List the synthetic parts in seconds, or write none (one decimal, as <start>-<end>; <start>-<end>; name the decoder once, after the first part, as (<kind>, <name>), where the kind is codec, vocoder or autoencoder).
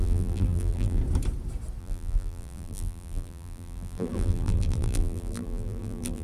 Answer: 0.0-1.0 (vocoder, BigVGAN v2); 1.8-6.2